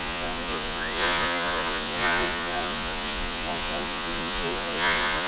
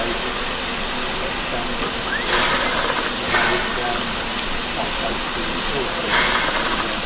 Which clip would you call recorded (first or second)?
second